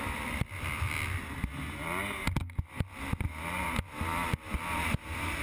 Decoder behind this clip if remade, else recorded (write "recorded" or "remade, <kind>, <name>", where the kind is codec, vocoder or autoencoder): recorded